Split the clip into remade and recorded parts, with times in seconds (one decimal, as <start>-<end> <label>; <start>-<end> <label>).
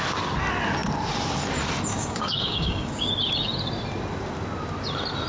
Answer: 0.0-1.9 recorded; 1.9-3.1 remade; 3.1-5.3 recorded